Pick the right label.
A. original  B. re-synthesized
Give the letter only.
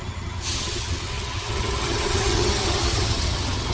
B